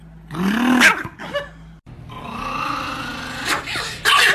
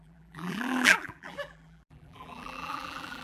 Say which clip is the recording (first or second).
first